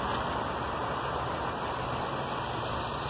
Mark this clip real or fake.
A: real